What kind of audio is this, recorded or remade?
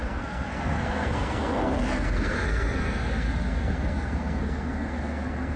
remade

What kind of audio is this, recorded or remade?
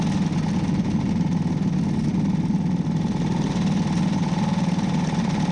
recorded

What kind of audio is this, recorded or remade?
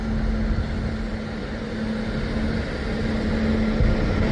recorded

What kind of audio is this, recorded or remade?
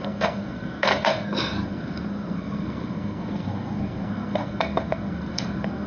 remade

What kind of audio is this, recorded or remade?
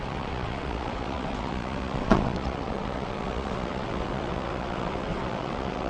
remade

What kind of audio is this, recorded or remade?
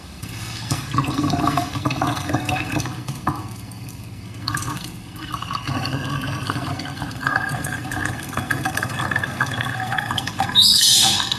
remade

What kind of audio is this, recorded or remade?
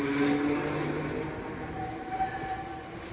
recorded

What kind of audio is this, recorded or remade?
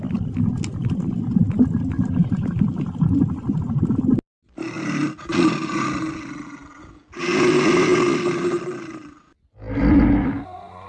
recorded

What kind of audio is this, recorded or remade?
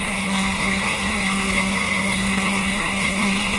remade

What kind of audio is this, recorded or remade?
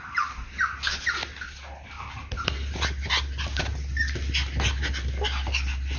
recorded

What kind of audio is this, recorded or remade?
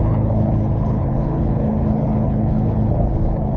remade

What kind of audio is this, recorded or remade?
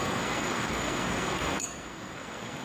remade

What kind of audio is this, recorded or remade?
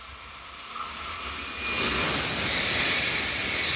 recorded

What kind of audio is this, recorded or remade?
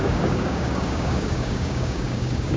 remade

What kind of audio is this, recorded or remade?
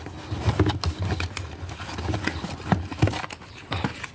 recorded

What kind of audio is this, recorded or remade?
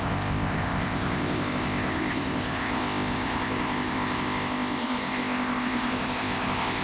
remade